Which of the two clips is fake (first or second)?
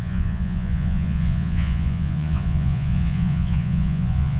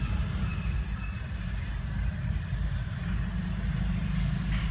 first